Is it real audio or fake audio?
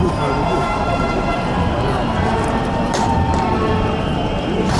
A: fake